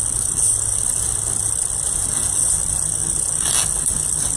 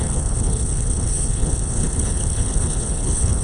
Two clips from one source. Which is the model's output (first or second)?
second